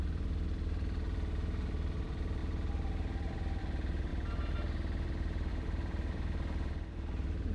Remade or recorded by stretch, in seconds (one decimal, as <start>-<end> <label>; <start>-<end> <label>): 0.0-7.5 remade